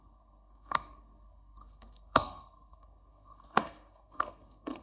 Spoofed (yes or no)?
yes